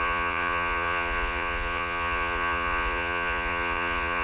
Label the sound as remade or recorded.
remade